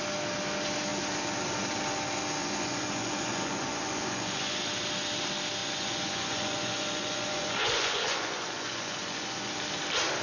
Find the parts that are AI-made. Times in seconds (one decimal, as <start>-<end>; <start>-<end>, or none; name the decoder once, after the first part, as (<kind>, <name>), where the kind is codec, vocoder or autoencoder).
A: 2.4-4.6 (vocoder, Vocos); 5.6-9.5